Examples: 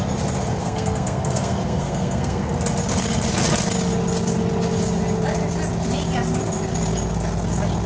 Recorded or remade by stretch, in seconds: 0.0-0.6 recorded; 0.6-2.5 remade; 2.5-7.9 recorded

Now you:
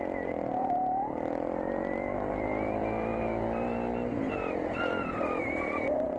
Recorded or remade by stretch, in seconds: 0.0-6.2 recorded

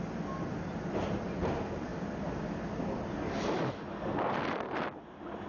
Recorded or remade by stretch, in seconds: 0.0-5.5 recorded

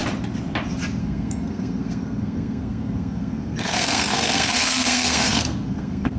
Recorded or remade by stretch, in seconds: 0.0-1.0 recorded; 1.0-6.2 remade

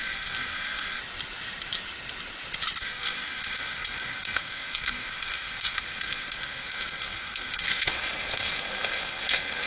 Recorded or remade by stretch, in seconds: 0.0-1.0 remade; 1.0-2.8 recorded; 2.8-9.7 remade

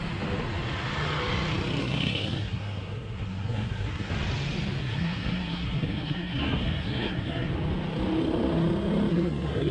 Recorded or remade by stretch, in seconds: 0.0-1.8 recorded; 1.8-4.1 remade; 4.1-4.8 recorded; 4.8-7.5 remade; 7.5-9.1 recorded; 9.1-9.7 remade

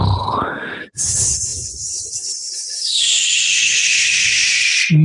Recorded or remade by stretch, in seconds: 0.0-5.0 recorded

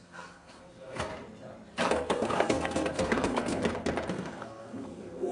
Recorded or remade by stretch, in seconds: 0.0-1.1 remade; 1.1-1.9 recorded; 1.9-3.6 remade; 3.6-4.1 recorded; 4.1-5.3 remade